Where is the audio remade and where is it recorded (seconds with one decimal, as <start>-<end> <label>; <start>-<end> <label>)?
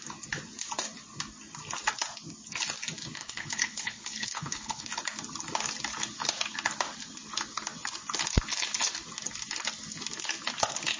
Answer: 0.0-3.2 recorded; 3.2-4.9 remade; 4.9-11.0 recorded